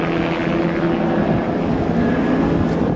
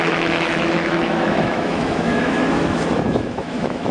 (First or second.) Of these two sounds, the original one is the first